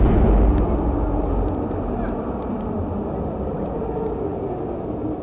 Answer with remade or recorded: recorded